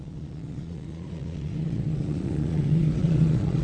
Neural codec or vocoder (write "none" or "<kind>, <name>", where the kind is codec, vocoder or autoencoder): vocoder, Vocos